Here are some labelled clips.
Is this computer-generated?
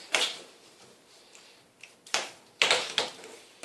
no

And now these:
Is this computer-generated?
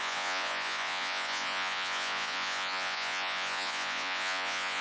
yes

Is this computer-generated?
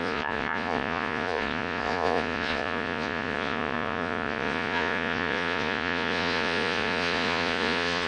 yes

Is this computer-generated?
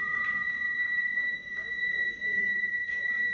yes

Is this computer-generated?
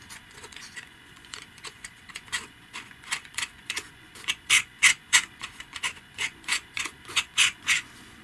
yes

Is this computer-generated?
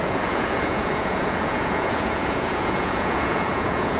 yes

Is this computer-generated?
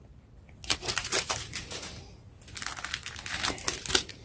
no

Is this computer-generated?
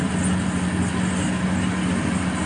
no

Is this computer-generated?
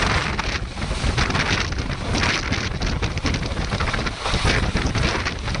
no